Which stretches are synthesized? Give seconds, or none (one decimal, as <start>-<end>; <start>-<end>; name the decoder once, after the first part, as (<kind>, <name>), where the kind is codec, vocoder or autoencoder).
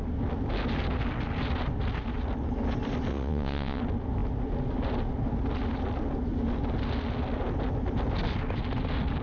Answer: 3.1-3.8 (vocoder, WaveNeXt)